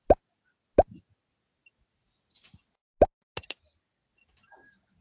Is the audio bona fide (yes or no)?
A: yes